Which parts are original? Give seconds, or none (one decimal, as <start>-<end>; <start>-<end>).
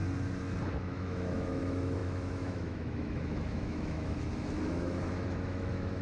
0.0-0.8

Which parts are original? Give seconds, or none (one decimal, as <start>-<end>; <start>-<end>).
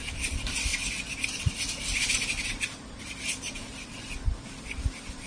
0.7-1.4; 3.7-5.3